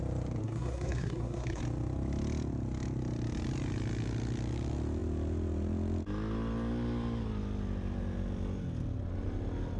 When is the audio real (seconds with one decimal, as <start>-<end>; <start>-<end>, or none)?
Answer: 0.0-0.4; 1.6-9.8